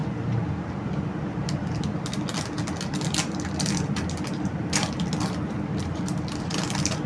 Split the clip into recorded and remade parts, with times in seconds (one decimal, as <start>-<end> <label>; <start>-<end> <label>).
0.0-7.1 recorded